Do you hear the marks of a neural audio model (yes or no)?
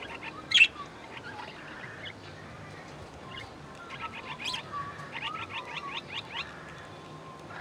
yes